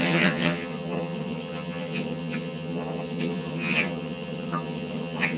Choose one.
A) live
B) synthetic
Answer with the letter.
B